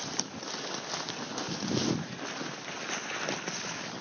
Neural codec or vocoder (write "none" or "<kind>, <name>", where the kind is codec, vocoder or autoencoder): none